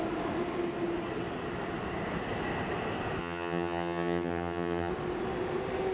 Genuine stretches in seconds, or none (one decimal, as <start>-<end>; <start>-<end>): 0.0-3.2; 4.9-5.9